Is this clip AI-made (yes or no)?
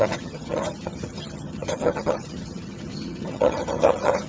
yes